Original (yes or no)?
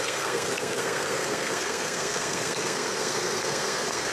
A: no